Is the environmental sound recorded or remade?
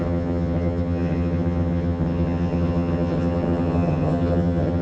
remade